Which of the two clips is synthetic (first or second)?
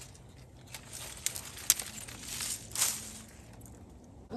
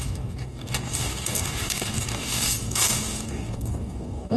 second